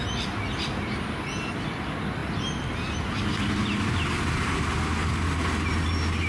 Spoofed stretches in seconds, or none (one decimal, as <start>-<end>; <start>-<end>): none